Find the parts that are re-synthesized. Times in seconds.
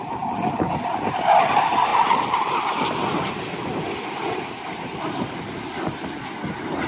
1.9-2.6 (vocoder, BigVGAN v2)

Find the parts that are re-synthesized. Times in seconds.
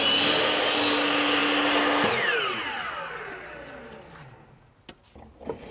none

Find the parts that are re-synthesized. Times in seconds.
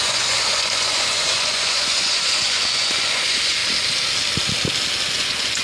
0.0-3.6 (vocoder, Vocos); 5.1-5.6